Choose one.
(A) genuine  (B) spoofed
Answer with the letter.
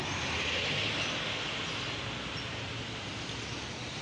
A